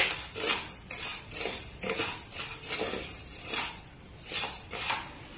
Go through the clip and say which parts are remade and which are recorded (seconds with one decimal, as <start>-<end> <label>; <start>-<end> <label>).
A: 0.0-5.4 recorded